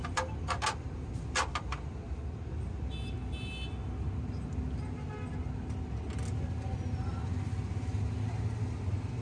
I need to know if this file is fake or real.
real